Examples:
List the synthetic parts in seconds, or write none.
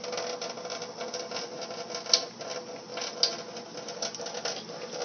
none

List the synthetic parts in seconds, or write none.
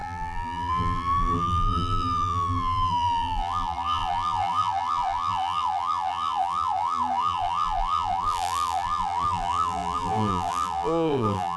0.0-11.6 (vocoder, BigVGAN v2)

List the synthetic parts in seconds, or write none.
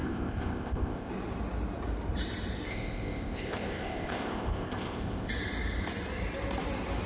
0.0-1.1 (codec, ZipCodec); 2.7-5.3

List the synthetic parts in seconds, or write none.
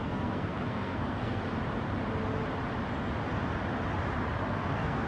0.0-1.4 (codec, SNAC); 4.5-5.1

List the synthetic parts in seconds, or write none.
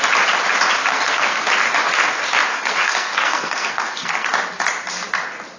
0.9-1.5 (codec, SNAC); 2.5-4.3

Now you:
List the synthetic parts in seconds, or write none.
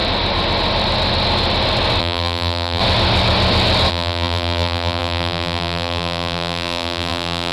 2.0-2.8 (vocoder, BigVGAN v2); 3.9-7.5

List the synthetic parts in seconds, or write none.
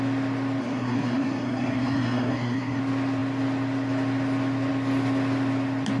0.6-2.8 (codec, SNAC)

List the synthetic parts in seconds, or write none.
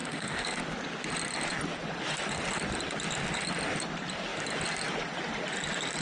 0.0-0.6 (codec, SNAC)